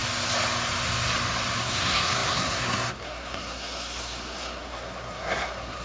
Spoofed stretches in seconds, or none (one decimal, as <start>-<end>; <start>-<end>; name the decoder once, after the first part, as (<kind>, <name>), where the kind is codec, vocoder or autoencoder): 1.6-5.8 (codec, SNAC)